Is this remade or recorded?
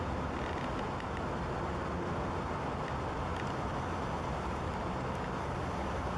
recorded